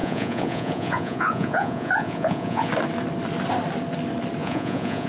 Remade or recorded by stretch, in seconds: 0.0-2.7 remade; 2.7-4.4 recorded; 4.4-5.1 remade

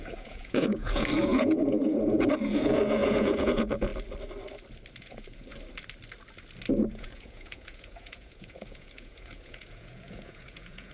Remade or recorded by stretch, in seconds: 0.0-3.9 remade; 3.9-5.0 recorded; 5.0-5.5 remade; 5.5-6.7 recorded; 6.7-10.9 remade

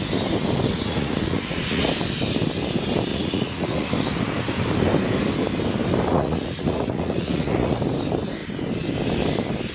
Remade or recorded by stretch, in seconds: 0.0-0.7 recorded; 0.7-1.9 remade; 1.9-3.1 recorded; 3.1-3.9 remade; 3.9-6.1 recorded; 6.1-7.8 remade; 7.8-9.7 recorded

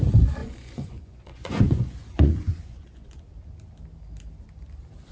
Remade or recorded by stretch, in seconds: 0.0-0.4 recorded; 0.4-3.2 remade; 3.2-5.1 recorded

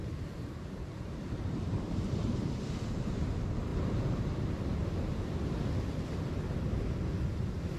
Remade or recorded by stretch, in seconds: 0.0-2.7 remade; 2.7-3.7 recorded; 3.7-4.2 remade; 4.2-7.8 recorded

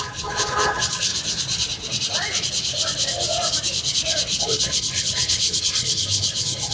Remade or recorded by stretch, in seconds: 0.0-1.1 remade; 1.1-4.4 recorded; 4.4-6.7 remade